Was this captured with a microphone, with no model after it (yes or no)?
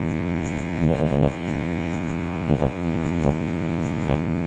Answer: no